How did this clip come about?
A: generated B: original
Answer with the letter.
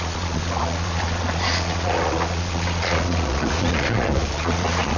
A